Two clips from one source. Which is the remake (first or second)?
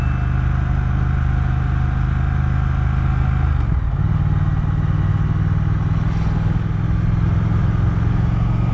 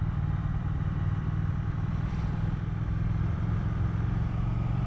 second